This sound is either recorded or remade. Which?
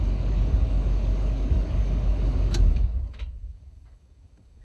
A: remade